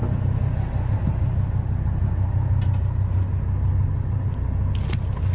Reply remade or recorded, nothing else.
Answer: recorded